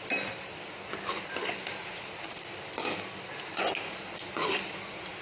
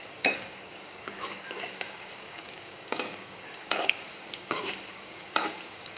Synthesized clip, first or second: second